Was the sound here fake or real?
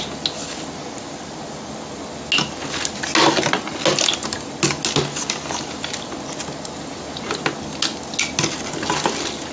real